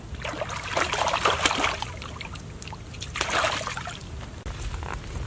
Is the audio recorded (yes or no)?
yes